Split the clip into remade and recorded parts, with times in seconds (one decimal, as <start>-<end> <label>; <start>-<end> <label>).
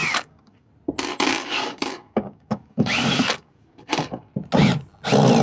0.0-0.7 remade; 0.7-1.1 recorded; 1.1-4.3 remade; 4.3-5.4 recorded